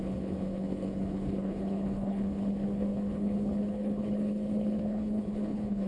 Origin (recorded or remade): remade